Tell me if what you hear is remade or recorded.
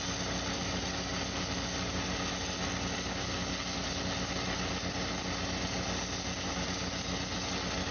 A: recorded